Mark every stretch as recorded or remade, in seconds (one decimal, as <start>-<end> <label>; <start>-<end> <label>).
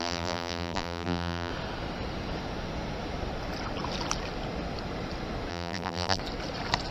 0.0-1.5 remade; 1.5-5.5 recorded; 5.5-6.2 remade; 6.2-6.9 recorded